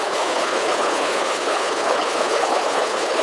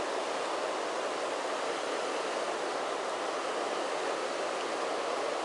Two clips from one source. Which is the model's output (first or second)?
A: first